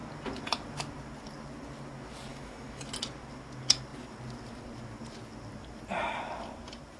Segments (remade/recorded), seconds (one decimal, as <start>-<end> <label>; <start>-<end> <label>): 0.0-2.3 recorded; 2.3-2.8 remade; 2.8-7.0 recorded